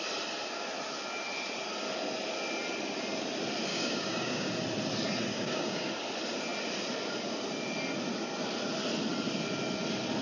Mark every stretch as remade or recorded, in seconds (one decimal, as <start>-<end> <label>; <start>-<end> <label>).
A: 0.0-3.7 recorded; 3.7-4.5 remade; 4.5-5.3 recorded; 5.3-5.9 remade; 5.9-10.2 recorded